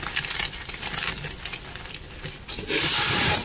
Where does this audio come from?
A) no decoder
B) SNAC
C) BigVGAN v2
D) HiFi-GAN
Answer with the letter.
A